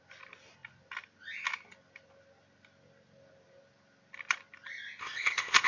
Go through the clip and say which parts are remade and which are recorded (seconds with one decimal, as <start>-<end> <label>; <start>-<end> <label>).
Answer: 0.0-5.0 recorded; 5.0-5.7 remade